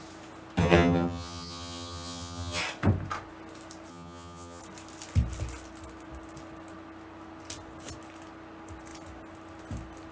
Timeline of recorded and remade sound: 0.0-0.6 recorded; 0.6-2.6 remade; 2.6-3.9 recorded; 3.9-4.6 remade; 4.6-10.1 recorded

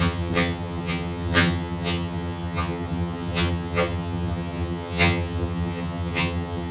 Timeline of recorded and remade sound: 0.0-6.7 remade

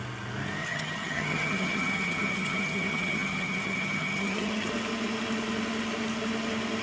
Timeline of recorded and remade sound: 0.0-0.6 recorded; 0.6-4.7 remade; 4.7-6.8 recorded

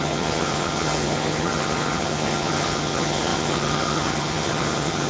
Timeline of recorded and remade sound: 0.0-5.1 remade

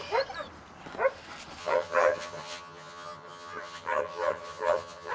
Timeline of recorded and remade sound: 0.0-1.6 recorded; 1.6-5.1 remade

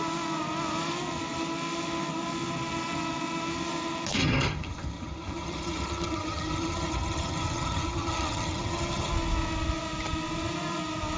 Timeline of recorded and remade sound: 0.0-4.2 recorded; 4.2-9.1 remade; 9.1-11.2 recorded